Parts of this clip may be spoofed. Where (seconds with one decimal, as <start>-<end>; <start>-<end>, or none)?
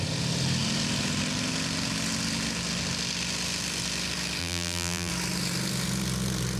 4.4-5.1